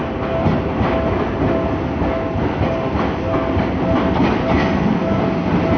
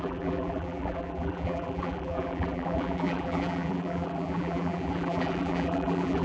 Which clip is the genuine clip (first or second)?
first